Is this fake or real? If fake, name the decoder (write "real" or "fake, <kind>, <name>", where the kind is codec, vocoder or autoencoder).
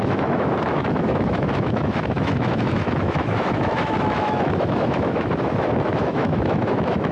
fake, autoencoder, DAC-VAE